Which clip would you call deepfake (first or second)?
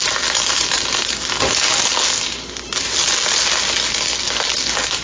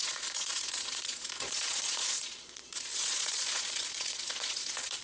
second